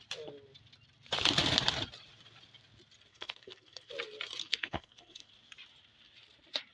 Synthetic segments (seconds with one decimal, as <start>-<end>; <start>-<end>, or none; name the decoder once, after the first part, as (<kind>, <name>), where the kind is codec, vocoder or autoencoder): 3.1-3.9 (codec, SNAC); 4.4-5.3